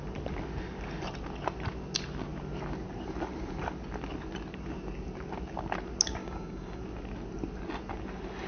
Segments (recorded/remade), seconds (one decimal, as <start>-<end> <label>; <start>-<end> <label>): 0.0-6.2 recorded; 6.2-6.8 remade; 6.8-8.5 recorded